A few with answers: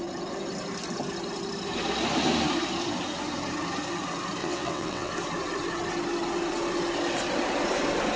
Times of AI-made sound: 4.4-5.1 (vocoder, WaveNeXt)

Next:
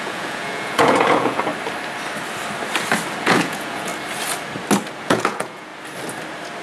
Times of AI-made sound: 0.0-1.5 (vocoder, Vocos); 3.2-3.9; 5.0-5.7

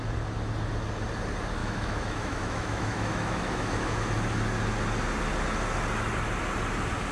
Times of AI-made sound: 1.6-4.1 (autoencoder, DAC-VAE)

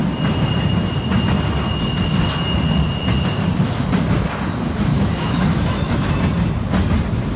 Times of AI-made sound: 4.9-6.1 (autoencoder, DAC-VAE)